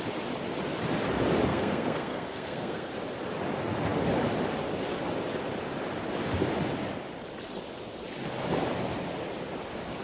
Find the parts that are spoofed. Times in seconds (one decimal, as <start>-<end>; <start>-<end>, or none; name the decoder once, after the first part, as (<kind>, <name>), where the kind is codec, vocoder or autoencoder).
1.5-2.9 (codec, SNAC)